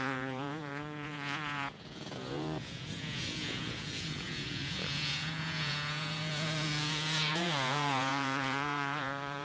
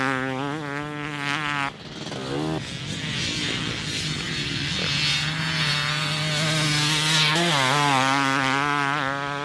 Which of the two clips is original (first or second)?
second